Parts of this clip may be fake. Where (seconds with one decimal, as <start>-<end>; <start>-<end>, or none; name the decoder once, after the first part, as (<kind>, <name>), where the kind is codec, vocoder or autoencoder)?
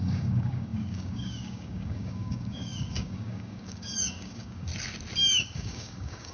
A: 0.0-4.7 (codec, DAC); 5.3-6.3